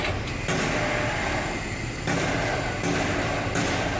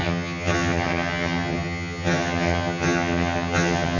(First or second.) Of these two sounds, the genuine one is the first